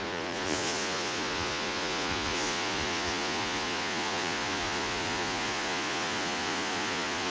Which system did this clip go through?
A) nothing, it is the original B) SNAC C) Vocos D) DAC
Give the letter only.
C